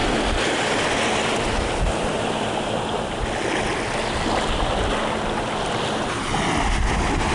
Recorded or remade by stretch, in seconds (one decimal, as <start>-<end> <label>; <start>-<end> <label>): 0.0-7.3 recorded